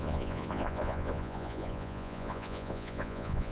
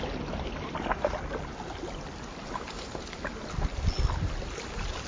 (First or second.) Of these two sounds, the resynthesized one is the first